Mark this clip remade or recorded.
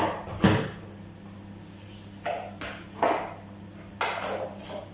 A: recorded